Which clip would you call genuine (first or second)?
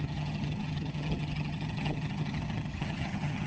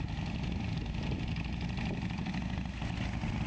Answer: second